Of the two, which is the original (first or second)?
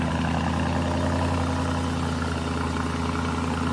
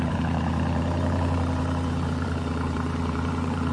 first